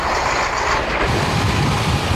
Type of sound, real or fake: fake